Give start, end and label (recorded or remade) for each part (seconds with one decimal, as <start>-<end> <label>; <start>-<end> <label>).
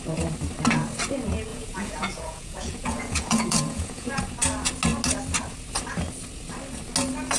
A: 0.0-1.5 recorded; 1.5-4.2 remade; 4.2-7.4 recorded